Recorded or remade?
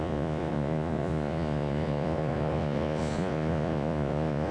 remade